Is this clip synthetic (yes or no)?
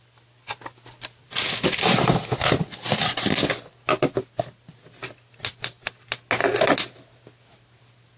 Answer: no